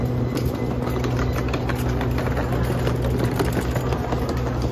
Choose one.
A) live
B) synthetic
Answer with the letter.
A